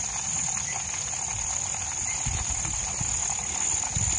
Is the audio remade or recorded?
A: recorded